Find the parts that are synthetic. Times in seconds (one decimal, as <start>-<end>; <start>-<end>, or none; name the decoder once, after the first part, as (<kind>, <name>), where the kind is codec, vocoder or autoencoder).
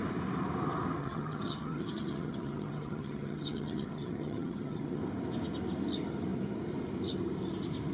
1.0-5.0 (vocoder, HiFi-GAN)